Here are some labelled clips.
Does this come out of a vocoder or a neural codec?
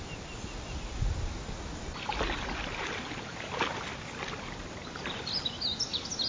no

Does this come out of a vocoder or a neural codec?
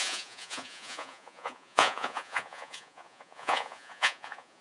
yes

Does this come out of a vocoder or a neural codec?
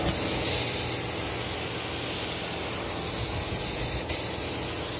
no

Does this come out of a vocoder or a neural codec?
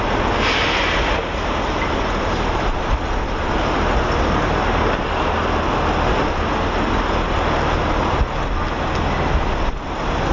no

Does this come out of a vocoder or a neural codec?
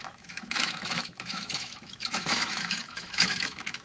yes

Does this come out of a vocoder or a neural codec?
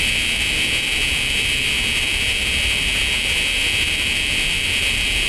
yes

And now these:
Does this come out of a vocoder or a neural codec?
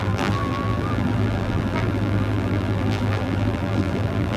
yes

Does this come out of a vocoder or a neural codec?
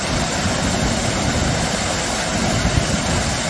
no